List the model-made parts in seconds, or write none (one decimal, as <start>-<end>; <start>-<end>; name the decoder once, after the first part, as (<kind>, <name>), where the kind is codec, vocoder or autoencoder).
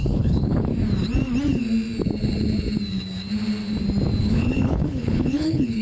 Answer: 0.0-0.7 (codec, HILCodec); 4.2-5.8